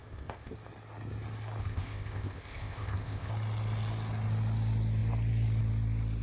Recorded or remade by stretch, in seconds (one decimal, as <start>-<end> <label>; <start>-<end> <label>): 0.0-0.5 remade; 0.5-1.6 recorded; 1.6-3.3 remade; 3.3-6.2 recorded

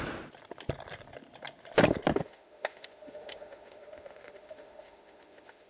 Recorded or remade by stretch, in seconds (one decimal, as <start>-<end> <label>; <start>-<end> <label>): 0.0-2.1 recorded; 2.1-5.7 remade

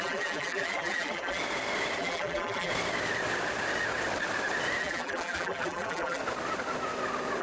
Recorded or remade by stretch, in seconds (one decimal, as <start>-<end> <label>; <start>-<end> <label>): 0.0-1.4 remade; 1.4-2.0 recorded; 2.0-2.7 remade; 2.7-4.8 recorded; 4.8-6.2 remade; 6.2-7.4 recorded

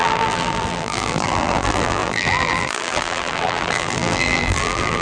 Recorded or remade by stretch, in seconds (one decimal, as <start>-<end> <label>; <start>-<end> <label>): 0.0-5.0 remade

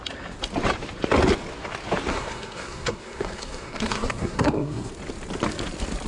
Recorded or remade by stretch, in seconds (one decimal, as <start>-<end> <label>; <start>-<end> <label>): 0.0-2.1 recorded; 2.1-4.9 remade; 4.9-6.1 recorded

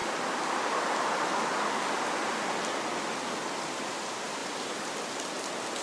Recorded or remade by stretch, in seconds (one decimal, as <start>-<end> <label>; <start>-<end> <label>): 0.0-4.4 recorded; 4.4-4.9 remade; 4.9-5.8 recorded

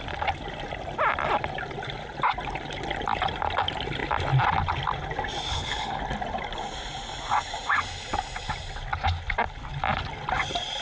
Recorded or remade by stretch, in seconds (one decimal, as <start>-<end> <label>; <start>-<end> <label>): 0.0-5.5 recorded; 5.5-6.0 remade; 6.0-10.8 recorded

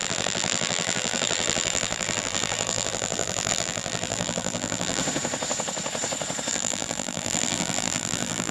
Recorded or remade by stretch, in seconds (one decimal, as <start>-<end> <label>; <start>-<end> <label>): 0.0-5.0 remade; 5.0-6.5 recorded; 6.5-8.5 remade